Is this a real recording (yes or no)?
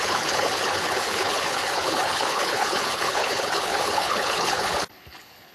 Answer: no